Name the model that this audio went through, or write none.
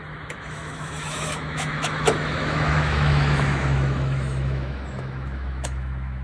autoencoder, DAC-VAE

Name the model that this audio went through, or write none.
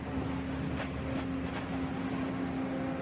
none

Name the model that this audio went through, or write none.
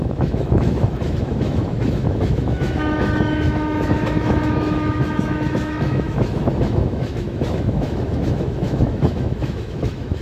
autoencoder, DAC-VAE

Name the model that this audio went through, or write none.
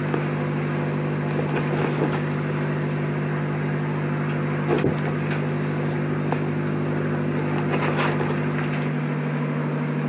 none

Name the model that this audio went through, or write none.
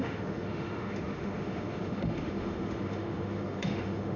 autoencoder, DAC-VAE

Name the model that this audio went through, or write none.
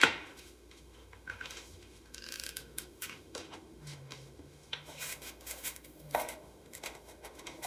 autoencoder, DAC-VAE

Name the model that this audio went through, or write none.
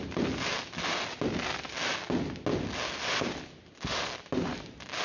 none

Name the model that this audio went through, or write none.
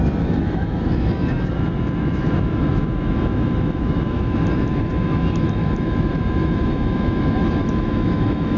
autoencoder, DAC-VAE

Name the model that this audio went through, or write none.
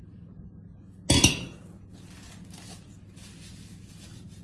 none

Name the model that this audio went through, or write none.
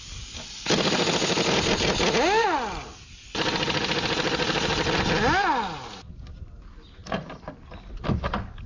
none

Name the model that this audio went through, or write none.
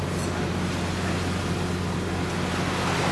none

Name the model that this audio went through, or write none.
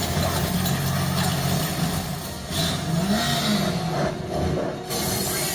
none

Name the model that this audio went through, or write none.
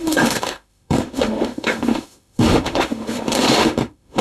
autoencoder, DAC-VAE